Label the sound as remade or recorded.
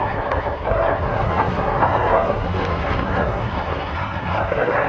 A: remade